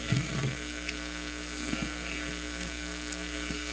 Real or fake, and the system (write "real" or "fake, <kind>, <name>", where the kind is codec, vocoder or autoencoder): fake, codec, SNAC